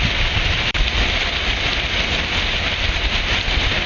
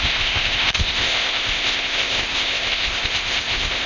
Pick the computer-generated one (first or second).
second